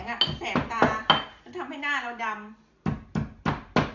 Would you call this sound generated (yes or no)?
no